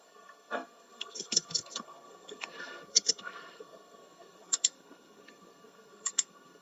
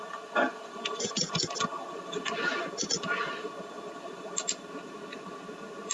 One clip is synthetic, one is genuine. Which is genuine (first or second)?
second